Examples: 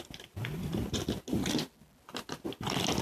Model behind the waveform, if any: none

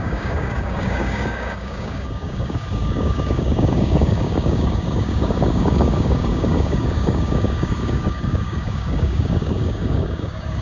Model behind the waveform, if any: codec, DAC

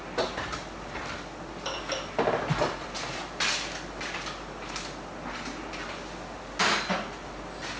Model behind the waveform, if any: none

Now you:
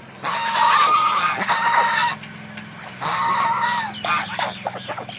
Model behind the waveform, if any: none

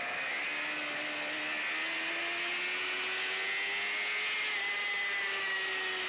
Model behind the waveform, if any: none